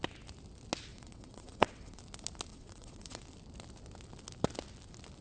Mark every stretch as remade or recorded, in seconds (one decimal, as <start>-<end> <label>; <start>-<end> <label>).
0.0-0.9 recorded; 0.9-2.0 remade; 2.0-2.5 recorded; 2.5-3.2 remade; 3.2-5.2 recorded